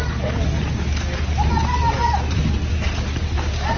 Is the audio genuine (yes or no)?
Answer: yes